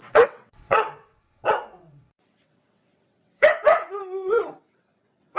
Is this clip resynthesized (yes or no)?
yes